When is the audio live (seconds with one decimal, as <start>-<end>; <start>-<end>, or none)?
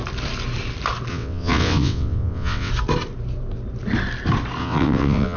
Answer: 0.0-1.1; 2.7-4.6